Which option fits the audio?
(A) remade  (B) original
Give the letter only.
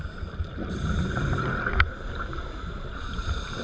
B